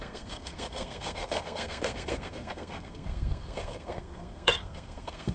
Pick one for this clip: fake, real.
fake